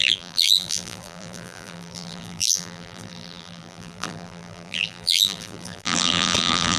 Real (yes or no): no